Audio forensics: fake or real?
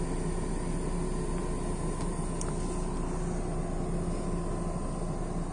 real